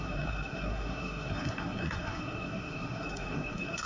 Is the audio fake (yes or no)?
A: yes